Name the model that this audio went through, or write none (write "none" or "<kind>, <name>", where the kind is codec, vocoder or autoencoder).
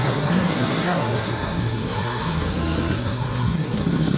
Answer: codec, SNAC